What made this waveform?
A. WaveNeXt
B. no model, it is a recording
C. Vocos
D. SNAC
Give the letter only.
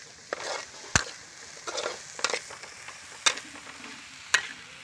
B